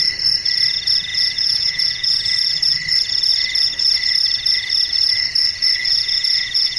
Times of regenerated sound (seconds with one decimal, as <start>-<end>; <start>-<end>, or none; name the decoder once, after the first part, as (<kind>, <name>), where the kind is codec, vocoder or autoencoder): 1.1-2.6 (vocoder, Vocos); 5.8-6.8